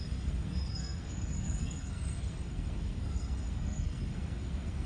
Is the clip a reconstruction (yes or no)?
yes